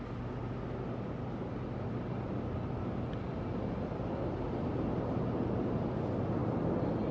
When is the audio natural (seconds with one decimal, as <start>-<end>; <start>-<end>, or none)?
0.0-7.1

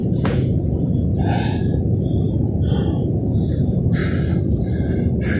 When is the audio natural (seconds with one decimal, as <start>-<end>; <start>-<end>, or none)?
1.6-2.8; 4.0-5.4

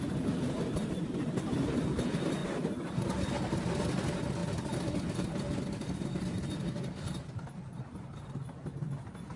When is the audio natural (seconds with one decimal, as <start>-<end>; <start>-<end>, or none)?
0.0-9.4

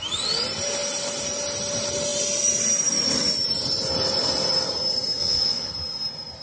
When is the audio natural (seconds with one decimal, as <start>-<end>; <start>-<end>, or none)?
0.0-5.2; 5.7-6.4

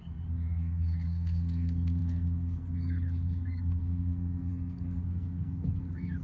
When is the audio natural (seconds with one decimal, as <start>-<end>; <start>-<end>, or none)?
none

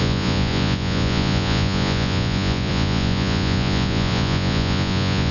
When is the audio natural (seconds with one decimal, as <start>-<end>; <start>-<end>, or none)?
none

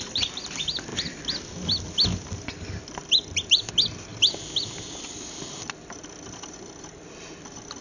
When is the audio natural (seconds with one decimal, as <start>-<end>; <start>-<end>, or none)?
0.0-7.8